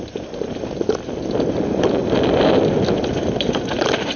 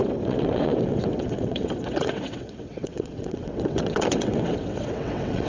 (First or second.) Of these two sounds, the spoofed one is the second